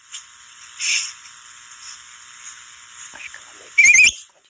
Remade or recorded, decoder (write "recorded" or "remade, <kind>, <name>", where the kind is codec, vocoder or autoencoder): recorded